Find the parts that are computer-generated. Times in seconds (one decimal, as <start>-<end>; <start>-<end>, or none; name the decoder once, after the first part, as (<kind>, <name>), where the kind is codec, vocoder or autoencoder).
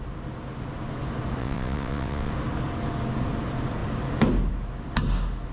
1.4-2.3 (vocoder, WaveNeXt)